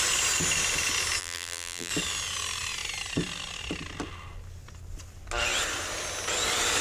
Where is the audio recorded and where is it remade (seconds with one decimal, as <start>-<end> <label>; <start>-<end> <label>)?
0.0-1.2 recorded; 1.2-1.9 remade; 1.9-6.8 recorded